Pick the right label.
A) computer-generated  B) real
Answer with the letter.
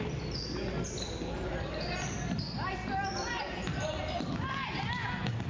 B